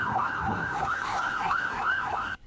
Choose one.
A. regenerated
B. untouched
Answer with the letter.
A